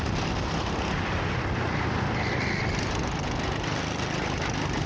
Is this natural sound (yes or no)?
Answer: yes